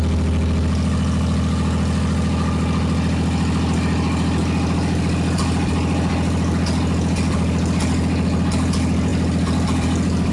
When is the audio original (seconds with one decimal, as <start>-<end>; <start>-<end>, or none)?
0.0-10.3